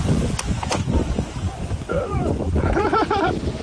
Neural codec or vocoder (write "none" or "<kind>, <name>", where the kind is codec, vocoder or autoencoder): vocoder, Vocos